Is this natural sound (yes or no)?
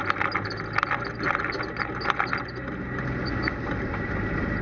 yes